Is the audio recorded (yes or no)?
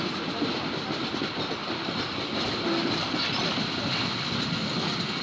yes